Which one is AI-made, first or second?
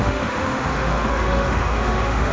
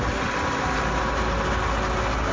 first